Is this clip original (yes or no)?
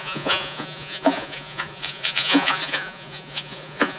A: no